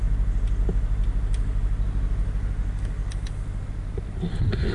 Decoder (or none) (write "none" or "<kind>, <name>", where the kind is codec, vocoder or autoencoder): none